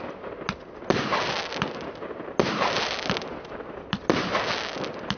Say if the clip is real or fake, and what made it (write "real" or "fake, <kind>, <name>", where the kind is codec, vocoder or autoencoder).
real